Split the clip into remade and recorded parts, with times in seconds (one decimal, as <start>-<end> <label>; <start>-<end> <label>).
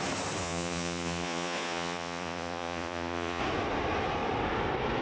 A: 0.0-0.4 recorded; 0.4-3.4 remade; 3.4-5.0 recorded